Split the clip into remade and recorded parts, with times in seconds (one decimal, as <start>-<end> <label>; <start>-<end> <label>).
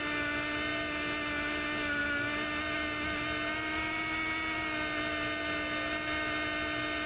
0.0-7.1 recorded